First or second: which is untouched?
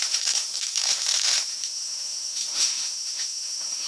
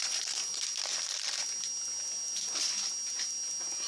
second